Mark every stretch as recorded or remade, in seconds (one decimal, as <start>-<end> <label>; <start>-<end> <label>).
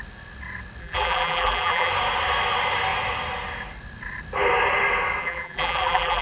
0.0-0.8 recorded; 0.8-1.9 remade; 1.9-5.2 recorded; 5.2-6.2 remade